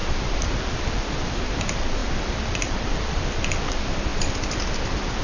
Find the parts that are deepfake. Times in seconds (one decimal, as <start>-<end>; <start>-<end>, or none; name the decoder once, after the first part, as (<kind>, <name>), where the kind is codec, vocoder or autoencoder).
0.0-5.2 (vocoder, BigVGAN v2)